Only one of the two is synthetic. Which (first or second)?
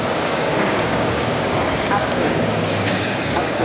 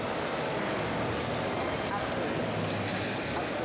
first